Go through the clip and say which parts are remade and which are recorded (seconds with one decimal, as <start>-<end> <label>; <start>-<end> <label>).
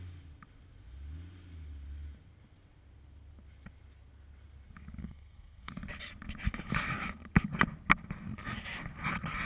0.0-5.0 recorded; 5.0-5.7 remade; 5.7-9.4 recorded